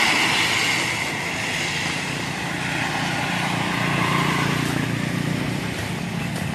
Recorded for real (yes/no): yes